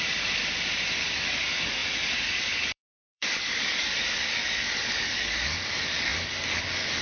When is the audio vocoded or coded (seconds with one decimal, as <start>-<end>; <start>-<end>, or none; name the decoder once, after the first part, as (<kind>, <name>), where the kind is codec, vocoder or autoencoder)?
0.0-0.4 (codec, DAC); 1.0-7.0